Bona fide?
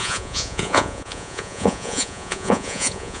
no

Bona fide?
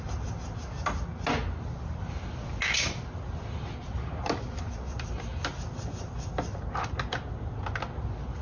yes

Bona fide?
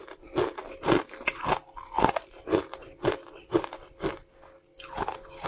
yes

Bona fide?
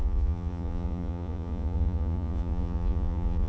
no